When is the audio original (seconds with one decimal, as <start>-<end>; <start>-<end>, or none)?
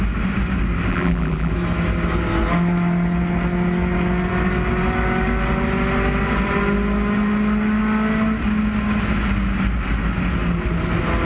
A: 0.0-0.9; 1.5-11.2